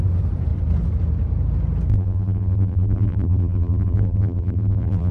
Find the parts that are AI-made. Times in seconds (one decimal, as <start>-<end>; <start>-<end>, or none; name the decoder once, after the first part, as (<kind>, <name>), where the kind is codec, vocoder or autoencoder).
1.9-5.1 (vocoder, BigVGAN v2)